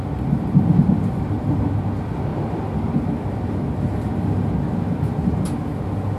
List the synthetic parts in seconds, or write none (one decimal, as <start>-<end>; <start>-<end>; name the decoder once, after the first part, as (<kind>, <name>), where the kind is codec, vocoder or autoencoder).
2.3-4.2 (vocoder, BigVGAN v2)